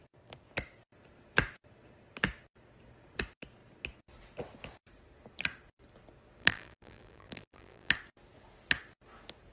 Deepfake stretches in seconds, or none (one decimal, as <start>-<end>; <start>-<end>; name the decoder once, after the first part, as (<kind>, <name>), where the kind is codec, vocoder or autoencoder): 6.4-7.9 (vocoder, BigVGAN v2)